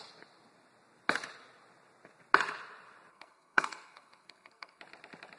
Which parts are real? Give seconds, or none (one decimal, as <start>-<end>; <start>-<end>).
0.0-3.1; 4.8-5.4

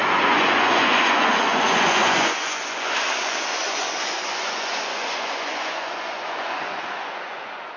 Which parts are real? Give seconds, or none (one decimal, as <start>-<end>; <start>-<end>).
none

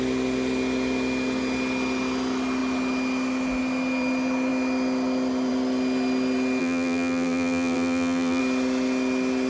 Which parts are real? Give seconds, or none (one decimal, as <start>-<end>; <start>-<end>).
0.0-6.6; 8.4-9.5

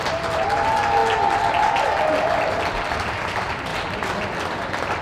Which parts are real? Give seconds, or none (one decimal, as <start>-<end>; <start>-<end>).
1.0-2.0; 3.7-4.4

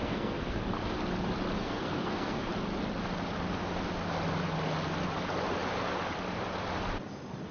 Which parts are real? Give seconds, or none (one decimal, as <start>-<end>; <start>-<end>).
0.6-1.6; 2.5-7.5

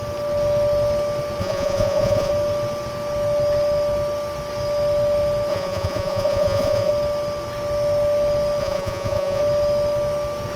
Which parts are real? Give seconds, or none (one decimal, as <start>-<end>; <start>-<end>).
0.0-1.4; 2.3-5.5; 6.9-8.6; 9.4-10.6

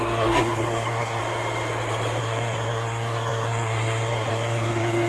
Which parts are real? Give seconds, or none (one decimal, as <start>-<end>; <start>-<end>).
1.2-2.2